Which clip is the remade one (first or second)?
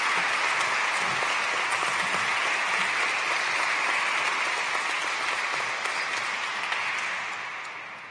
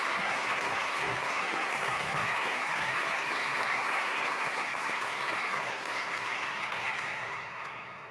second